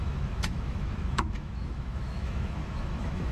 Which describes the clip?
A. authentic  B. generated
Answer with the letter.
B